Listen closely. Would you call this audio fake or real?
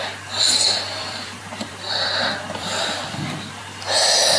fake